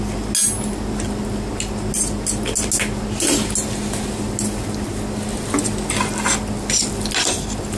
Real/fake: real